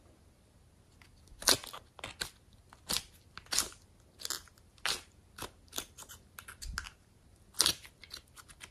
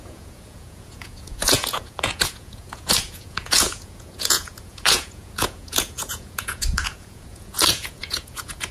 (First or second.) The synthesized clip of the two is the second